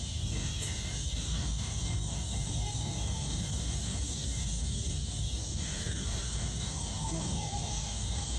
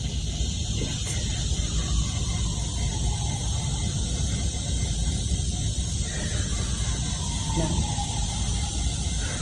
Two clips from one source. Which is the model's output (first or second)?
first